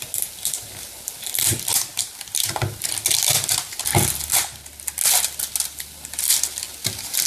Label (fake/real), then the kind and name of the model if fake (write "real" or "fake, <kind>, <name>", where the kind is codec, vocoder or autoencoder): real